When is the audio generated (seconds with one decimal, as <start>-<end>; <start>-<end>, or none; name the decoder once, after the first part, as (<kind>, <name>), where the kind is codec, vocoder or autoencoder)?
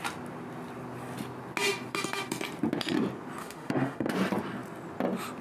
3.4-4.1 (autoencoder, DAC-VAE)